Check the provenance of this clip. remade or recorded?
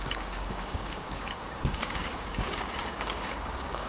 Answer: remade